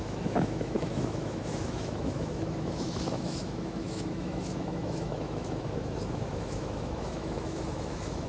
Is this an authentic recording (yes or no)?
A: no